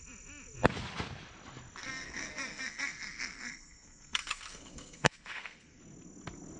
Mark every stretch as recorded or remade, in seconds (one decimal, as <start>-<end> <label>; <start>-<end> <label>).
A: 0.0-1.8 recorded; 1.8-5.8 remade; 5.8-6.6 recorded